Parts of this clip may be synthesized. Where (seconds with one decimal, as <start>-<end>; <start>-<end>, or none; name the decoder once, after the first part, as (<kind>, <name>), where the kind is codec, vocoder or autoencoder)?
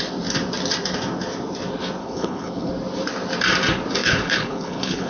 2.0-2.7 (codec, HILCodec); 4.0-5.1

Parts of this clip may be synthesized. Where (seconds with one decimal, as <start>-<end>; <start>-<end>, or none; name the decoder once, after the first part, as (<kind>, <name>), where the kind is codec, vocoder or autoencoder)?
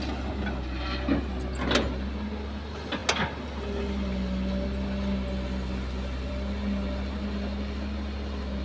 none